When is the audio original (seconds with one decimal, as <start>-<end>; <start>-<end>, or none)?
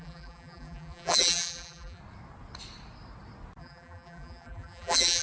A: 2.0-3.6